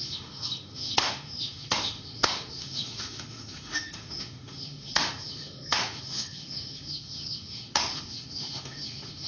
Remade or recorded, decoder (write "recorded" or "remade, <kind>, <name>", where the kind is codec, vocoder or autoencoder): remade, autoencoder, DAC-VAE